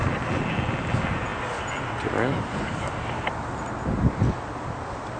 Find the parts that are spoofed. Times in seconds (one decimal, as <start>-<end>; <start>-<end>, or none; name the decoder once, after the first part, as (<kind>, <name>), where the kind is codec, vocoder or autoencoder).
none